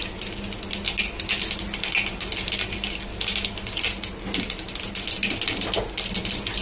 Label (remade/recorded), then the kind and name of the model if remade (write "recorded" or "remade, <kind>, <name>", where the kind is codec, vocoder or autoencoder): recorded